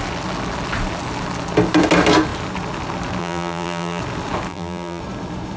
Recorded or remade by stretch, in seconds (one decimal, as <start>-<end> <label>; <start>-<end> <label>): 0.0-3.2 recorded; 3.2-4.0 remade; 4.0-4.5 recorded; 4.5-5.0 remade; 5.0-5.6 recorded